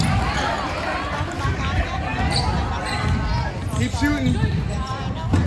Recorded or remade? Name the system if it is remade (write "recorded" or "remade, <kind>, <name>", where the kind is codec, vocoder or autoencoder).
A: recorded